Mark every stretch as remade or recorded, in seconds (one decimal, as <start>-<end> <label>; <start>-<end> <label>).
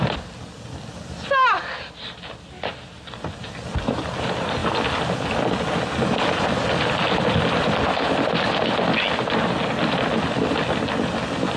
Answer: 0.0-11.6 recorded